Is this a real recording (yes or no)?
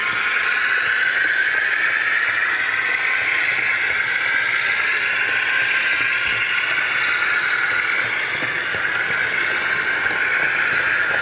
yes